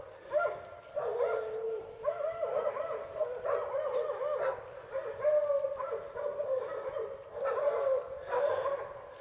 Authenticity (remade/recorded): recorded